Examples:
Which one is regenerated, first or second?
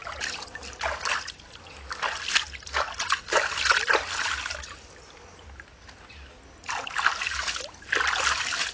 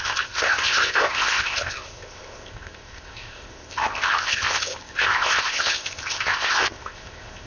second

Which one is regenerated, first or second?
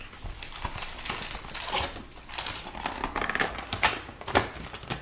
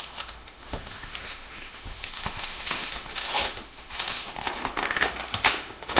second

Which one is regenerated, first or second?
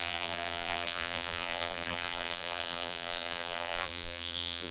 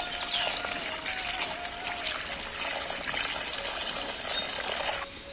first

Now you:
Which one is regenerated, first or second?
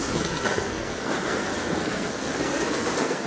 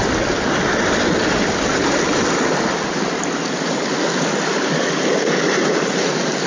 first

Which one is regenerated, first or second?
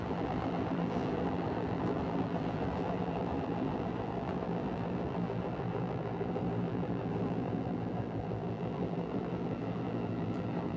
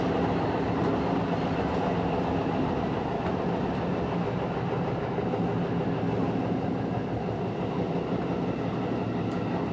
first